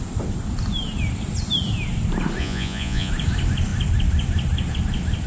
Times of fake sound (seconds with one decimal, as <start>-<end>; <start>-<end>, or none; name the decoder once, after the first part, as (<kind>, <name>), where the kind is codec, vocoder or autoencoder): 2.4-3.1 (vocoder, Vocos)